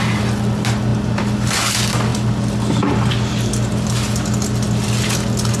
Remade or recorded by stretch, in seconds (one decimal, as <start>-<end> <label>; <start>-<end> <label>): 0.0-5.6 recorded